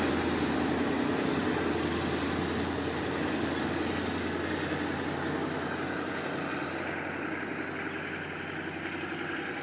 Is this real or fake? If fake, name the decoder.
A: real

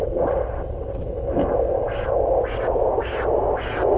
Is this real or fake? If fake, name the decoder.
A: real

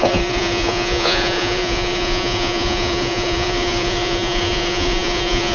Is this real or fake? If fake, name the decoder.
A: fake, vocoder, Vocos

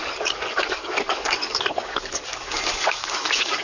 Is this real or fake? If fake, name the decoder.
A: fake, codec, DAC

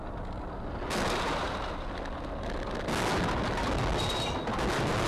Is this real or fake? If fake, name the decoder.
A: real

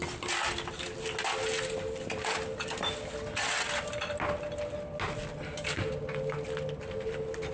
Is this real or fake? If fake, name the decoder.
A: real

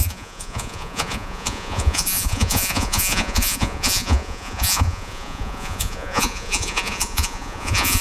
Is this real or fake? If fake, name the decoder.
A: fake, vocoder, Vocos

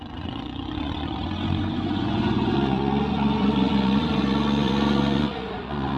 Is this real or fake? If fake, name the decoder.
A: fake, vocoder, Vocos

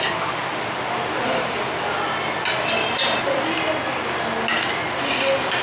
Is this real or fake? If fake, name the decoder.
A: real